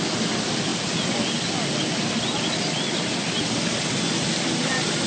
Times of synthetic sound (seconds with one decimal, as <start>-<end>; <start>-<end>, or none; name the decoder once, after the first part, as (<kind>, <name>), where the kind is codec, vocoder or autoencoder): none